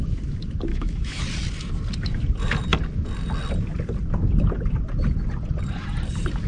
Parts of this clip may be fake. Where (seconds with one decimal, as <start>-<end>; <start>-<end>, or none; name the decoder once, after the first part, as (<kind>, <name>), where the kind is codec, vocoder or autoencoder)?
0.7-1.2 (autoencoder, DAC-VAE)